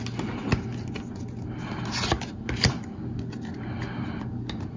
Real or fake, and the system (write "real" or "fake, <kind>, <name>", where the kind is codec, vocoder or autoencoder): real